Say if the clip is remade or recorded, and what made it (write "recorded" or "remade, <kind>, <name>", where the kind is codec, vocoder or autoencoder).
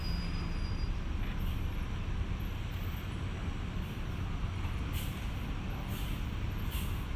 recorded